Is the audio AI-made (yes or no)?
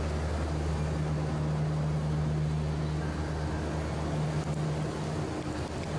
no